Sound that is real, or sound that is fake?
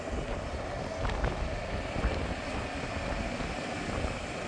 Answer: real